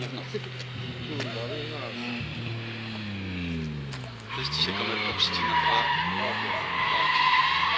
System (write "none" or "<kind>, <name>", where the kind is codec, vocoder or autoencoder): none